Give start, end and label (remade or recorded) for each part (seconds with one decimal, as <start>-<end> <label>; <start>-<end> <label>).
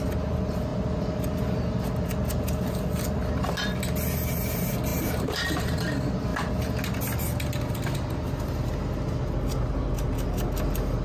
0.0-4.9 recorded; 4.9-5.8 remade; 5.8-11.0 recorded